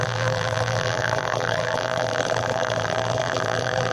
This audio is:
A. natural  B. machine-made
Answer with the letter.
B